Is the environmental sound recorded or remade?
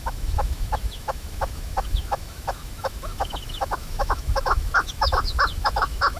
remade